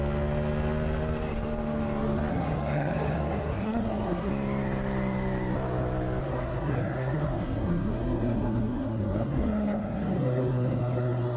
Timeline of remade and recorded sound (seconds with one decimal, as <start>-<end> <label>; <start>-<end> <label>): 0.0-2.3 recorded; 2.3-4.3 remade; 4.3-6.2 recorded; 6.2-11.4 remade